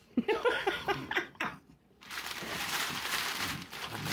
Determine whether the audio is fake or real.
fake